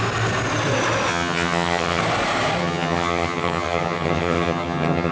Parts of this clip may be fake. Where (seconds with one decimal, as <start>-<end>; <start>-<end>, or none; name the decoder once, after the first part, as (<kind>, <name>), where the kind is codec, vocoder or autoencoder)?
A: 1.1-2.0 (vocoder, HiFi-GAN); 2.6-5.1